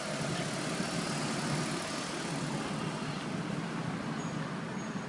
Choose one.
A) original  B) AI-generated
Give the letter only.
A